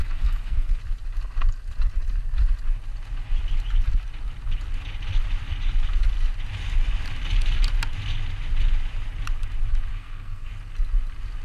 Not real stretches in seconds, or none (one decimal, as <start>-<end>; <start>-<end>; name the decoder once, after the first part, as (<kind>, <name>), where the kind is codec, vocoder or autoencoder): 0.0-0.8 (codec, SNAC); 9.9-10.5